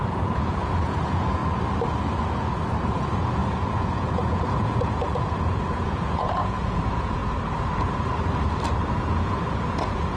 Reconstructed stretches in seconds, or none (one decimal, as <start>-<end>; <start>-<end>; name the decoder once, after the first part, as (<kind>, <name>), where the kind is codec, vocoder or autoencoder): 0.0-1.4 (vocoder, Vocos); 2.8-7.2; 9.0-10.2